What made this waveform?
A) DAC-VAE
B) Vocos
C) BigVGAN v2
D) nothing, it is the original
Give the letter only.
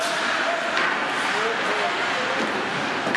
D